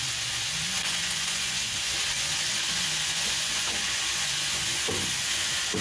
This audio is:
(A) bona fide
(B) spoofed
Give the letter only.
B